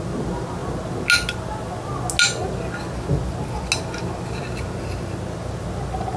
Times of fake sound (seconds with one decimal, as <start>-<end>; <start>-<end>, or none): none